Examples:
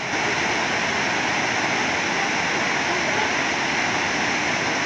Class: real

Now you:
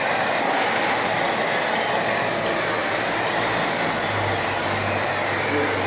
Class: real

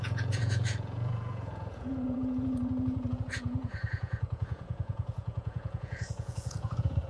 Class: fake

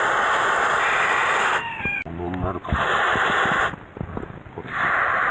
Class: real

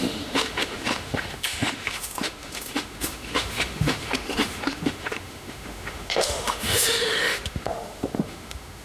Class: fake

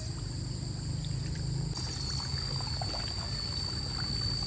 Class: real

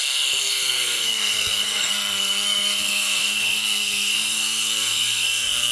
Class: fake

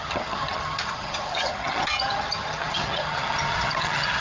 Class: fake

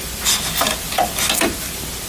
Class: real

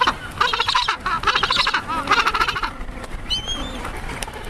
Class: real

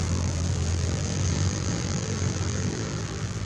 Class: fake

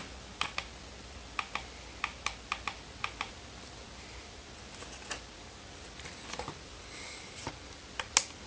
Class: real